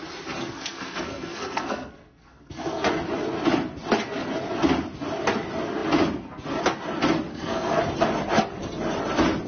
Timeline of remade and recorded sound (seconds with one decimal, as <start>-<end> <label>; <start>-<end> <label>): 0.0-0.4 recorded; 0.4-2.9 remade; 2.9-7.3 recorded; 7.3-7.8 remade; 7.8-9.5 recorded